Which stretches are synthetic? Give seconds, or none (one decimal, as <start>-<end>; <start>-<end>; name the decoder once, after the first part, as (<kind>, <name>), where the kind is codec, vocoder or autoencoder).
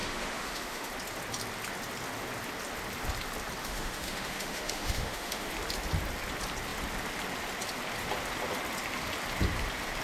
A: 0.0-0.9 (autoencoder, DAC-VAE); 3.6-5.5